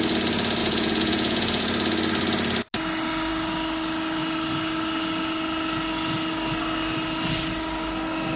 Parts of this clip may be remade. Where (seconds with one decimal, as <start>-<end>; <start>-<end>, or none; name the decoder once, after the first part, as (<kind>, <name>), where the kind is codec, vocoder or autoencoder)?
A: 0.6-1.6 (vocoder, Vocos)